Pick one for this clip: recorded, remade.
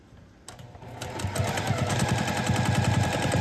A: recorded